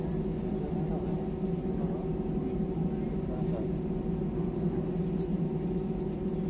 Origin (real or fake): real